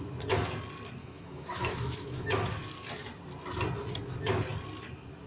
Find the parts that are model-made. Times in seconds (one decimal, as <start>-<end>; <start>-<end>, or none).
1.0-2.5